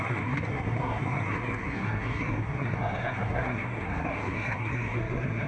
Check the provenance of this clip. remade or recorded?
remade